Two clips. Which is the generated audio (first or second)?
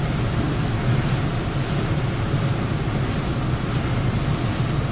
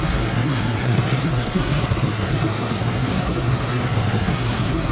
second